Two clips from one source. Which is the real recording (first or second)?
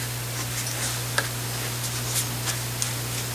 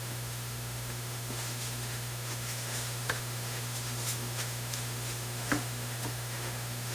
first